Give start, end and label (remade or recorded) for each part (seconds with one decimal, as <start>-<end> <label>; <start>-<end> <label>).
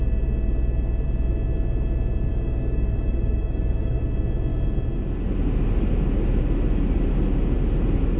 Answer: 0.0-2.3 recorded; 2.3-4.0 remade; 4.0-8.2 recorded